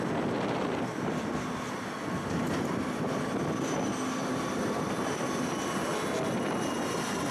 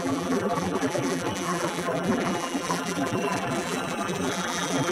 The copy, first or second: second